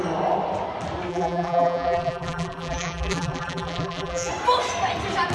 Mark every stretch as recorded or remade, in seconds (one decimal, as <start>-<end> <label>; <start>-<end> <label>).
0.0-1.1 recorded; 1.1-4.3 remade; 4.3-5.3 recorded